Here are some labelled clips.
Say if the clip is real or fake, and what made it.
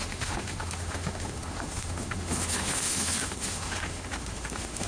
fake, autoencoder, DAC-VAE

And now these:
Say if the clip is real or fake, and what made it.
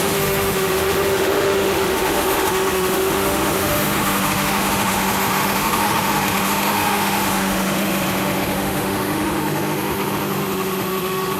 fake, autoencoder, DAC-VAE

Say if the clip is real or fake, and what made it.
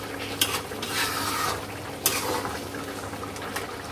real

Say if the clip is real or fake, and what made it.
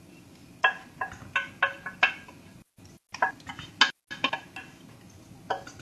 real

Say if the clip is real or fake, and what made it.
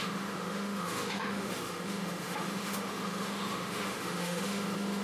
fake, autoencoder, DAC-VAE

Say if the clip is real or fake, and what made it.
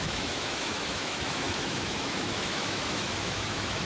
fake, autoencoder, DAC-VAE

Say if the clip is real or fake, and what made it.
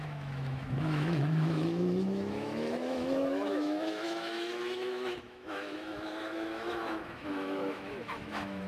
fake, autoencoder, DAC-VAE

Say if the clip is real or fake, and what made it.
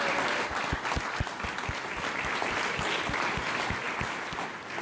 real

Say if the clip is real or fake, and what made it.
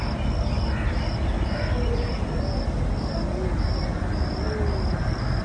real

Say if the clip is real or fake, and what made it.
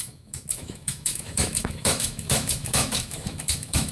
fake, autoencoder, DAC-VAE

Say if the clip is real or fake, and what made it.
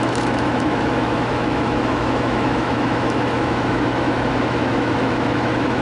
fake, autoencoder, DAC-VAE